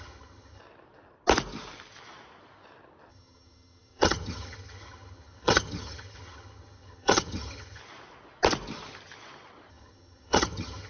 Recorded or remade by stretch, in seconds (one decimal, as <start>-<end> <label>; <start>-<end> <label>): 0.0-0.6 remade; 0.6-3.1 recorded; 3.1-7.8 remade; 7.8-9.7 recorded; 9.7-10.9 remade

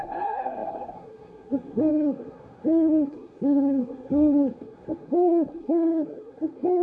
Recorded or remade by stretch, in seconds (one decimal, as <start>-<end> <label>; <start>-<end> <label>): 0.0-6.8 remade

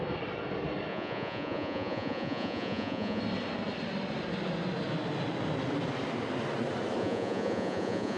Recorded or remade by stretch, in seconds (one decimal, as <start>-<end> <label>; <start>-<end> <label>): 0.0-0.9 recorded; 0.9-3.2 remade; 3.2-7.0 recorded; 7.0-8.2 remade